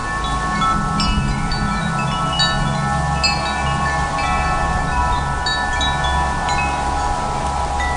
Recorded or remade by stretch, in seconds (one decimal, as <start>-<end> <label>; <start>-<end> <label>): 0.0-8.0 recorded